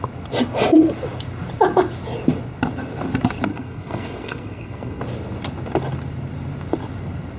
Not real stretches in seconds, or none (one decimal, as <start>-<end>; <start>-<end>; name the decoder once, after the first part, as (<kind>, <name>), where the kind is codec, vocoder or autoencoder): 3.5-5.0 (codec, SNAC)